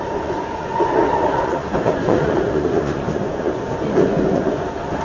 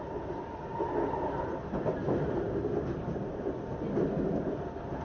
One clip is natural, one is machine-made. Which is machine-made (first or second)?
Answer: first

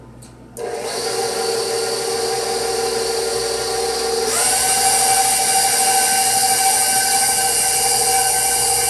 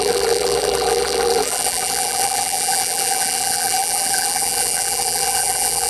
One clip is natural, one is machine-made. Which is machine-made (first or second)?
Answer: second